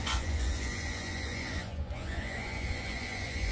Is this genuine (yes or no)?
no